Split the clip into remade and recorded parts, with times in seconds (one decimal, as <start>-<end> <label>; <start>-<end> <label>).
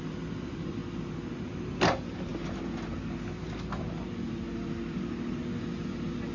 0.0-6.3 recorded